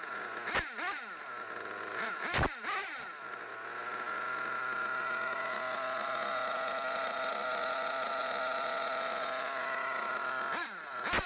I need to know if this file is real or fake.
real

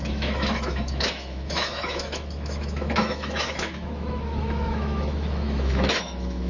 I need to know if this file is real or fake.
fake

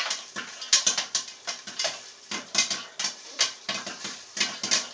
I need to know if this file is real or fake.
real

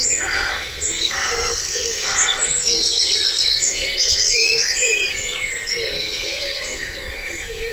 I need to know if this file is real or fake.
fake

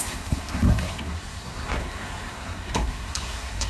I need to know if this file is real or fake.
fake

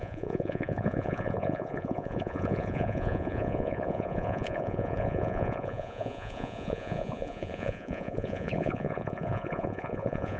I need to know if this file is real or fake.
fake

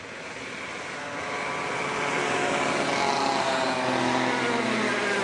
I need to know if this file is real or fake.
real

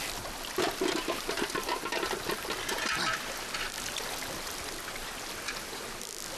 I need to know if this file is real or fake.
real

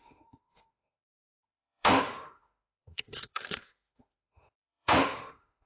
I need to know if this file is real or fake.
fake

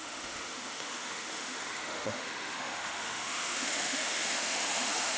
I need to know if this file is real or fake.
fake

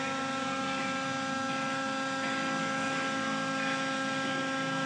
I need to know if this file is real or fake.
real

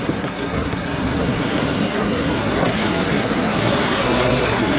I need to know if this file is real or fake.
fake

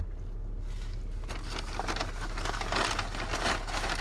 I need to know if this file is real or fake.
real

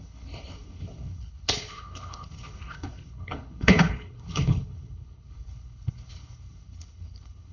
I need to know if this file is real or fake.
fake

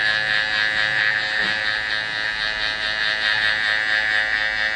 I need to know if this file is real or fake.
real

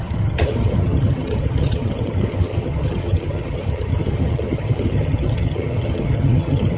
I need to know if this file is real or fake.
fake